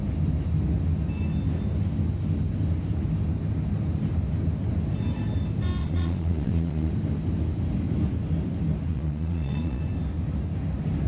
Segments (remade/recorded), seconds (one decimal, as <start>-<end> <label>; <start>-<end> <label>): 0.0-5.8 recorded; 5.8-6.9 remade; 6.9-8.9 recorded; 8.9-9.8 remade; 9.8-11.1 recorded